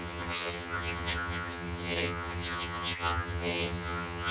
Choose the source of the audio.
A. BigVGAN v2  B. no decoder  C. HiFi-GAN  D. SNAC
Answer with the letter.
C